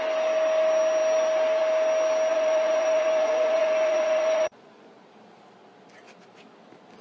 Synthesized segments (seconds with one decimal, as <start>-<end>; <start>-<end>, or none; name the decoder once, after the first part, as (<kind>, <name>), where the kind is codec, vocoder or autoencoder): 2.3-4.9 (vocoder, Vocos)

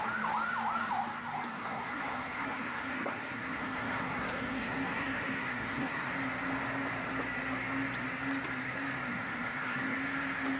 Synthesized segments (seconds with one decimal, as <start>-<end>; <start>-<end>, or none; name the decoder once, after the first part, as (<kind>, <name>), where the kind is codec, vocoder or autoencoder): 1.5-6.1 (codec, SNAC); 9.1-10.0

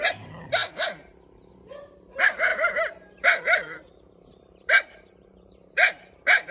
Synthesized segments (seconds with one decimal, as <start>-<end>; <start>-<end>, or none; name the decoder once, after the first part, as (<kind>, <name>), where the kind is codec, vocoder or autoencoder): 2.5-6.5 (vocoder, BigVGAN v2)

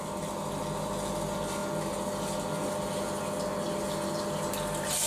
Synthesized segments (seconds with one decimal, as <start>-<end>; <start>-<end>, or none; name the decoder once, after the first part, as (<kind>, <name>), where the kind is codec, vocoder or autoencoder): none

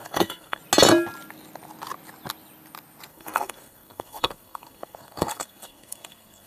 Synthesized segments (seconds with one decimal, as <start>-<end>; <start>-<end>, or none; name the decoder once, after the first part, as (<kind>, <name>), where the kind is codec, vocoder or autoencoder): 0.0-0.6 (codec, SNAC); 3.1-6.5

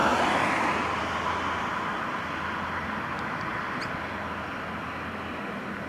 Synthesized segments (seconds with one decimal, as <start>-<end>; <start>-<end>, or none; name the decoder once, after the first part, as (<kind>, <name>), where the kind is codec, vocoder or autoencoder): none

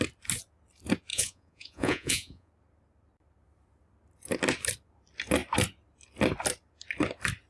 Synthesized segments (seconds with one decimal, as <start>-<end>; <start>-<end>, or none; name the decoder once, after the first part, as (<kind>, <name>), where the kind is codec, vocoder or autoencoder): 1.1-2.5 (vocoder, Vocos)